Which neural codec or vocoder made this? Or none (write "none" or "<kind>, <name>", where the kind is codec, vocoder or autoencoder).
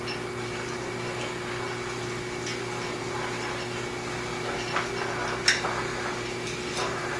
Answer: none